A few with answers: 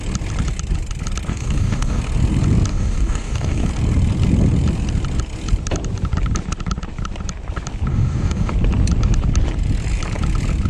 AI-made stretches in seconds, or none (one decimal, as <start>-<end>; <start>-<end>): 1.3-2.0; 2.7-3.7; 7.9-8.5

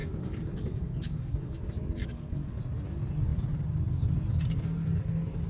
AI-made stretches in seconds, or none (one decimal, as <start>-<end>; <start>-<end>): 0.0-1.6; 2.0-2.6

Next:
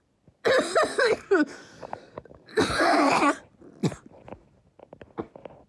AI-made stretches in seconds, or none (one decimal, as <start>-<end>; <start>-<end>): 0.9-2.7